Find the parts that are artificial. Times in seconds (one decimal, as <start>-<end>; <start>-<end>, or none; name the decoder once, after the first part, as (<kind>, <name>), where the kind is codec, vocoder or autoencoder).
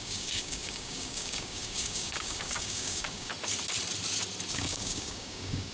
0.0-3.3 (codec, DAC); 4.5-5.7